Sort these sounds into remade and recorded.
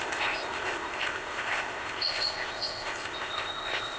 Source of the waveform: remade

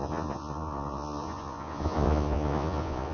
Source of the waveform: remade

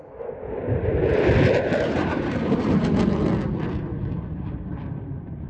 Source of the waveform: recorded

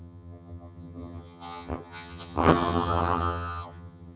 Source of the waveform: remade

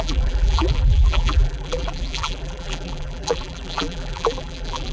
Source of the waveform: remade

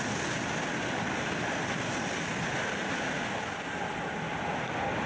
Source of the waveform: recorded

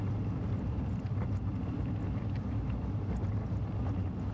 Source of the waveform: recorded